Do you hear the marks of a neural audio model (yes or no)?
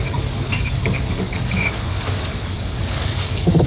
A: yes